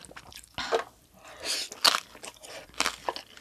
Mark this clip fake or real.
real